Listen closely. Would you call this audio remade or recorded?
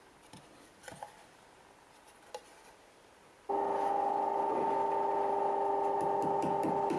recorded